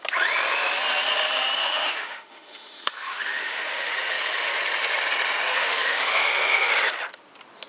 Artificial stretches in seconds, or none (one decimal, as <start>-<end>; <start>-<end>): 1.6-3.9; 5.5-6.7